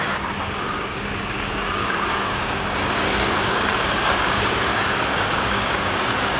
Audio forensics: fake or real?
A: fake